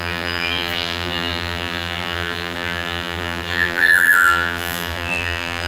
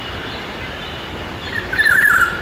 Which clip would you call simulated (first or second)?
first